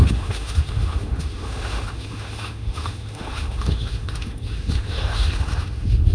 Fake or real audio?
fake